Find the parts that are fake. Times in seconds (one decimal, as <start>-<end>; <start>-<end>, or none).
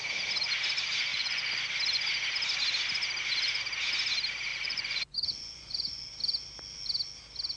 1.1-1.6; 4.5-6.1